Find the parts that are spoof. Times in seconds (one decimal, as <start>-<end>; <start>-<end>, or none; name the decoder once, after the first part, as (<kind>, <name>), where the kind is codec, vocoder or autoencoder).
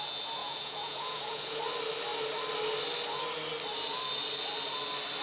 0.4-1.6 (vocoder, Vocos)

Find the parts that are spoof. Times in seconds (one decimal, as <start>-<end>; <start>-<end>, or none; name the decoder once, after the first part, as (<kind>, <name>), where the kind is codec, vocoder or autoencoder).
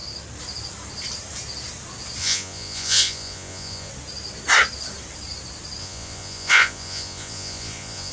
2.2-3.9 (vocoder, Vocos); 5.8-8.1